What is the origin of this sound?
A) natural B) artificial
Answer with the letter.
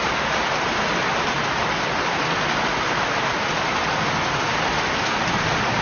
A